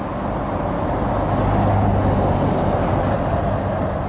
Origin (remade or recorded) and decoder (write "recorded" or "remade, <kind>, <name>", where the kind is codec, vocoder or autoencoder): recorded